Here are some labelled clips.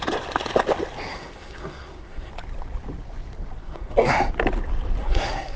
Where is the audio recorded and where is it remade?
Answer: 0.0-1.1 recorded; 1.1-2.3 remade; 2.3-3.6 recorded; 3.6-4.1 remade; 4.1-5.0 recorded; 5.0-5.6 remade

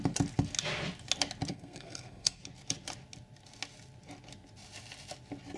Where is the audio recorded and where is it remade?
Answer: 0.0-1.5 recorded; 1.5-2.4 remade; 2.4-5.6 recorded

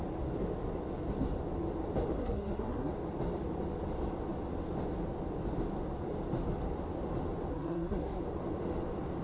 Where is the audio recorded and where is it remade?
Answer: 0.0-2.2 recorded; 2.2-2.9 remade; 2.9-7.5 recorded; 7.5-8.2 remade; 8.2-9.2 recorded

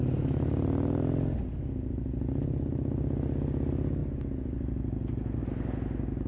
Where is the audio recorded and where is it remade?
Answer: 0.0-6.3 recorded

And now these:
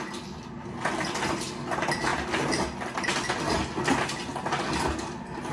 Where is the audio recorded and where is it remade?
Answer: 0.0-5.5 recorded

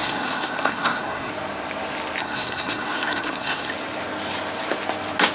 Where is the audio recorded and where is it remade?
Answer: 0.0-1.3 remade; 1.3-2.2 recorded; 2.2-3.7 remade; 3.7-5.3 recorded

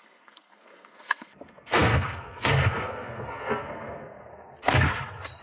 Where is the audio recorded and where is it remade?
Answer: 0.0-4.3 remade; 4.3-5.4 recorded